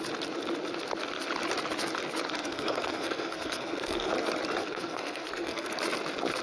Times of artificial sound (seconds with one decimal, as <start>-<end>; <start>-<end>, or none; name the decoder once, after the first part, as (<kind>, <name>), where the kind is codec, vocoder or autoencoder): 2.4-4.1 (codec, SNAC); 4.6-5.8